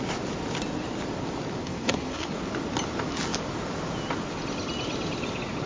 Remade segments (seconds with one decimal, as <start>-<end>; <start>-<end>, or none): 1.6-2.3